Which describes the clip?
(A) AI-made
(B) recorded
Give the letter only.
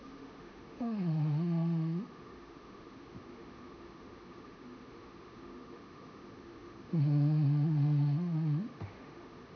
A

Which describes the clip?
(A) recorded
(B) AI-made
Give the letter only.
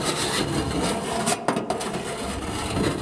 A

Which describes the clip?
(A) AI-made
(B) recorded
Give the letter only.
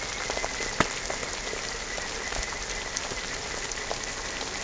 B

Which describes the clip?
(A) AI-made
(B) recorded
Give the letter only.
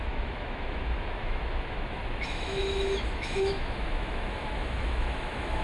A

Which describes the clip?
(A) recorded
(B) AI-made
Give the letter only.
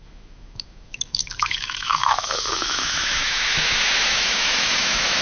B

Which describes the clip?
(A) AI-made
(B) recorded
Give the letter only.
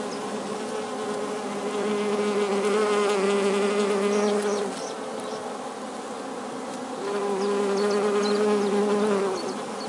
B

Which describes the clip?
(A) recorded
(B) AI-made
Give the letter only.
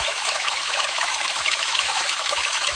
B